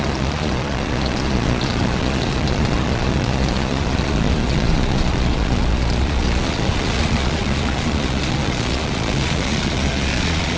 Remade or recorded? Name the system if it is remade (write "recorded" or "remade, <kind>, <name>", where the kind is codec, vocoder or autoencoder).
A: remade, vocoder, Vocos